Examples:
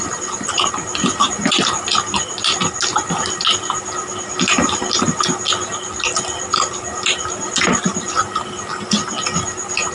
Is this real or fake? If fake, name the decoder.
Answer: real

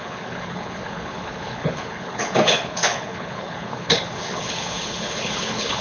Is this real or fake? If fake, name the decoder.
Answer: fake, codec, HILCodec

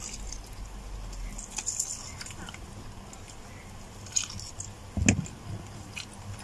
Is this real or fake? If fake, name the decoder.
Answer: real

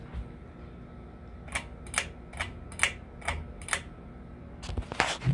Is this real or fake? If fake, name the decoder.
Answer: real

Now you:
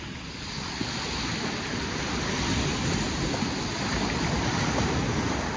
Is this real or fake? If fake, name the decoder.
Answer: real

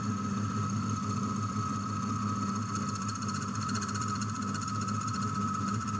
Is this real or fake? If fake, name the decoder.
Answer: real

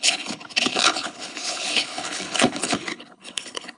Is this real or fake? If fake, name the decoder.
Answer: fake, codec, HILCodec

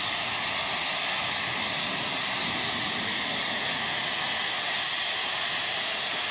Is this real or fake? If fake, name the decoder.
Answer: real